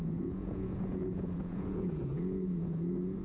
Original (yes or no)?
no